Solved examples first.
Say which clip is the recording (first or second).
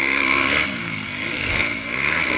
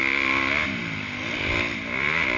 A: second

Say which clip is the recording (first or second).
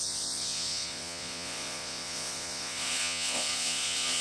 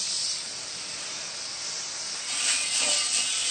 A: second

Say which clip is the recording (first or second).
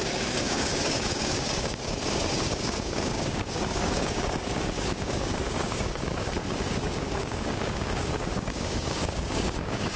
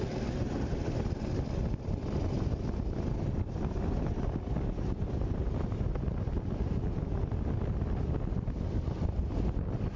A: second